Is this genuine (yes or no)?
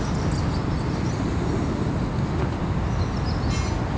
yes